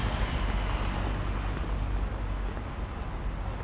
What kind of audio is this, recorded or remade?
recorded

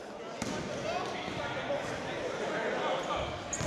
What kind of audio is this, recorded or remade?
recorded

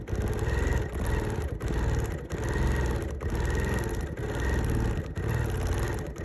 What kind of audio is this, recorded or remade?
recorded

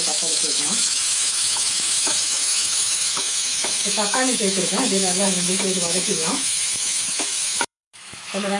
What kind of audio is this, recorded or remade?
remade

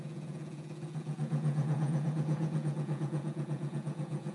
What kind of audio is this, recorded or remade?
remade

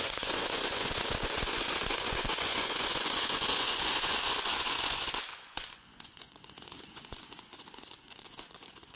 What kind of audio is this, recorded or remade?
remade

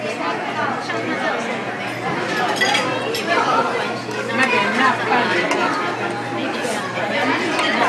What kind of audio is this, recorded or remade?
recorded